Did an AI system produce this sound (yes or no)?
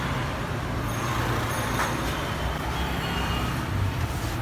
yes